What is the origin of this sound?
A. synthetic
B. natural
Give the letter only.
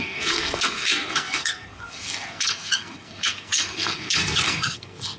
A